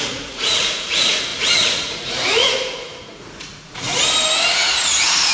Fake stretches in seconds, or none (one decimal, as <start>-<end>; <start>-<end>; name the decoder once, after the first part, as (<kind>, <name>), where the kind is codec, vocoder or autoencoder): 0.0-3.9 (vocoder, Vocos); 4.5-5.3